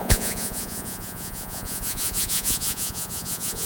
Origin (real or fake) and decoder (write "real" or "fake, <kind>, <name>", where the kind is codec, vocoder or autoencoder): fake, vocoder, Vocos